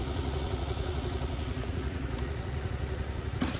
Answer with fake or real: fake